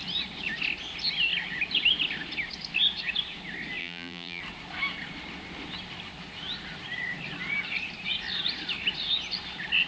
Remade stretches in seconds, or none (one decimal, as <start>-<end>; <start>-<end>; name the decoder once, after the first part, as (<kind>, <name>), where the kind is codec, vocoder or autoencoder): 3.8-4.4 (vocoder, BigVGAN v2)